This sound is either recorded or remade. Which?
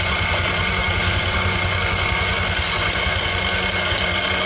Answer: remade